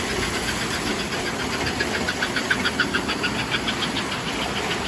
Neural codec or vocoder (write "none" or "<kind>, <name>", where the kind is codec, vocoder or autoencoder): none